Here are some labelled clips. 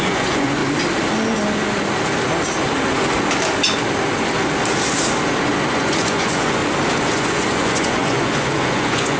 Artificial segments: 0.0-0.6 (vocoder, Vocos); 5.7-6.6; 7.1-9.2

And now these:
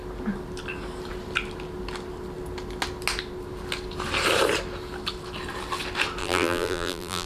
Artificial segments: 6.2-7.3 (vocoder, BigVGAN v2)